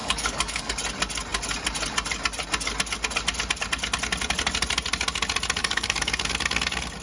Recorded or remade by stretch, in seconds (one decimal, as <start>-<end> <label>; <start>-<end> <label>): 0.0-0.7 remade; 0.7-5.6 recorded; 5.6-6.3 remade; 6.3-7.0 recorded